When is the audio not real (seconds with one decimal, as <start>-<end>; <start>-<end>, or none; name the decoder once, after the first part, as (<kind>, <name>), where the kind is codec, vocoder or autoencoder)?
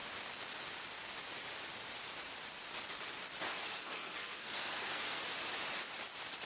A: 3.5-5.2 (codec, SNAC)